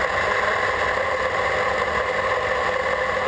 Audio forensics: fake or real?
real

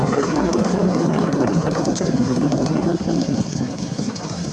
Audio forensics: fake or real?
fake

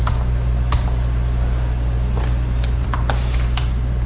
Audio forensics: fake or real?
real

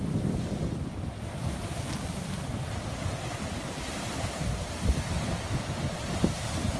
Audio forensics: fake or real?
real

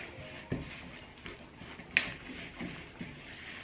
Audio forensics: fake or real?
real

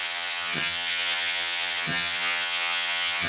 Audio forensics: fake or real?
fake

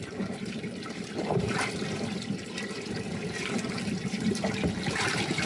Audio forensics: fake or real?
fake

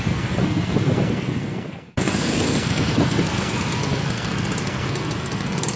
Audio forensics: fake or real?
fake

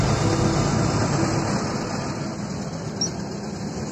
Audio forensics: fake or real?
real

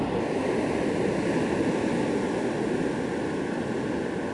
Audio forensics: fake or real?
real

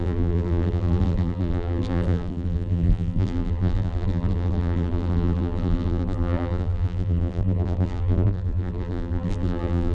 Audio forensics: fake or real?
fake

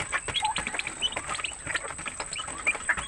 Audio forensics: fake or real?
real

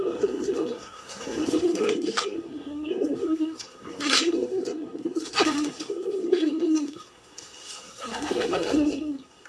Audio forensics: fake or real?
fake